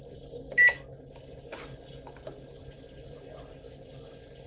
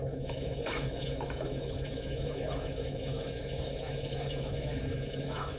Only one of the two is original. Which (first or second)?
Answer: first